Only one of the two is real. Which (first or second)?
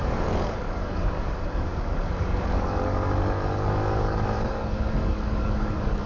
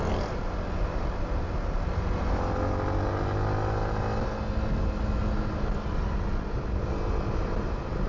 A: second